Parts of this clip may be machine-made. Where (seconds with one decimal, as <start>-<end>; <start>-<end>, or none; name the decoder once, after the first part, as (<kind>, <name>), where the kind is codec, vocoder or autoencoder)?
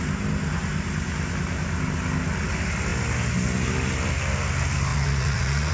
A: 4.9-5.7 (vocoder, Vocos)